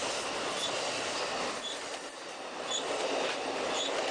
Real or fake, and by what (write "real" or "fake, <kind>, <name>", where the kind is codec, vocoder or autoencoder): real